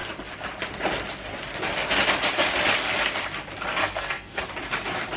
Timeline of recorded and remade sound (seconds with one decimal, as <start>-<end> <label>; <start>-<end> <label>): 0.0-3.8 recorded; 3.8-4.4 remade; 4.4-5.2 recorded